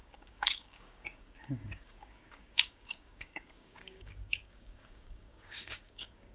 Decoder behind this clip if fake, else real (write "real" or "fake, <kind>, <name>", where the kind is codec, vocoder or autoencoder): fake, codec, DAC